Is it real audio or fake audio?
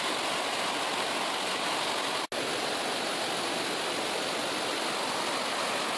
real